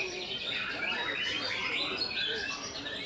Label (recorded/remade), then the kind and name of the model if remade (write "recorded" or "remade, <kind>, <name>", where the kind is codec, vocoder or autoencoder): remade, vocoder, BigVGAN v2